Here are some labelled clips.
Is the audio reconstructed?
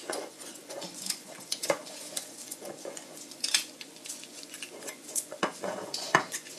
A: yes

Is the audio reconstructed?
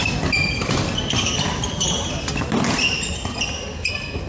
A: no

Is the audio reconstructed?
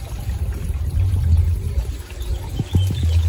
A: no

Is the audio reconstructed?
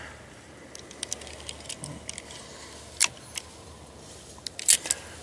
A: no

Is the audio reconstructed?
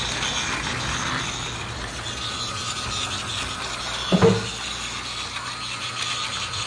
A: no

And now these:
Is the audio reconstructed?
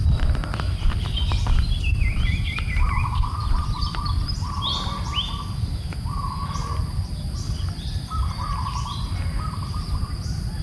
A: no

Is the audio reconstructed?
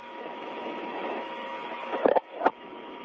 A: yes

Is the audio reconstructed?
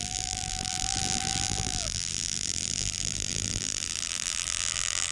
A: yes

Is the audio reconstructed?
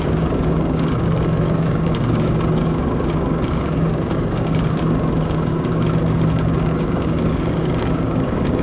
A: yes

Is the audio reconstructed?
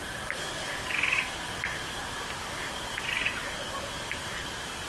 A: yes